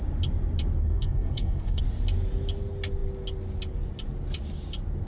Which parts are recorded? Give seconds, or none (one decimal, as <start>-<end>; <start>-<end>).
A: 0.0-0.8; 1.8-5.1